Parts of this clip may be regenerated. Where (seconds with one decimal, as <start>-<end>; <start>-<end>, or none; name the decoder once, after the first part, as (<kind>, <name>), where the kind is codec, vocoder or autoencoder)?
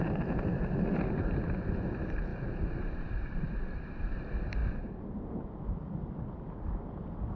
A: 0.0-4.6 (vocoder, BigVGAN v2)